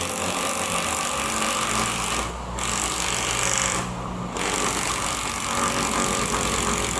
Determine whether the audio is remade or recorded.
recorded